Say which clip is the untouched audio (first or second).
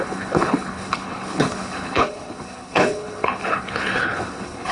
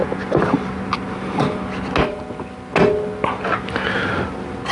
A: second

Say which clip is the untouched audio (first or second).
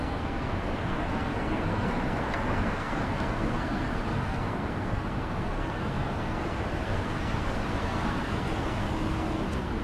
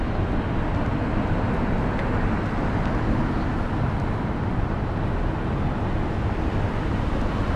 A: second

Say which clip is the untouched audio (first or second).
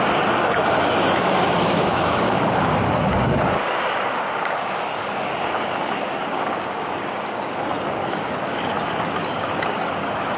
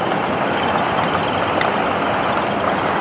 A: second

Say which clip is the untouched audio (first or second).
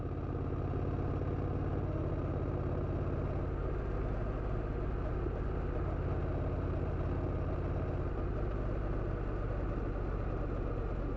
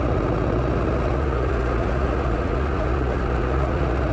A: first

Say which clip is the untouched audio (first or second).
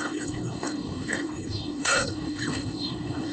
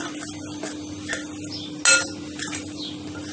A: second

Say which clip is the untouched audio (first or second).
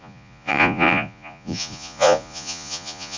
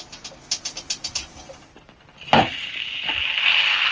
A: second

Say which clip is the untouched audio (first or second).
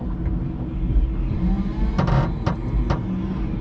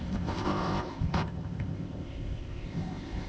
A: first